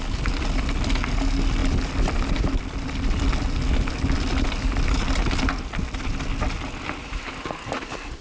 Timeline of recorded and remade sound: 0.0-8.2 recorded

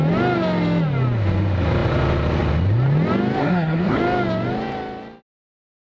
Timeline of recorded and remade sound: 0.0-3.4 recorded; 3.4-4.0 remade; 4.0-5.8 recorded

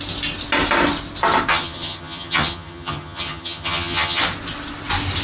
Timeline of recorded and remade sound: 0.0-1.5 recorded; 1.5-4.2 remade; 4.2-5.2 recorded

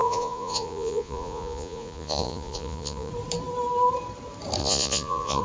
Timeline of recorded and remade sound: 0.0-3.1 remade; 3.1-4.6 recorded; 4.6-5.4 remade

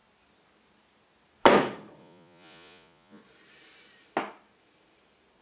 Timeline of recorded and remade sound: 0.0-2.0 recorded; 2.0-3.2 remade; 3.2-5.4 recorded